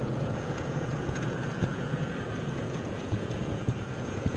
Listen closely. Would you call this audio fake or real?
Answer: fake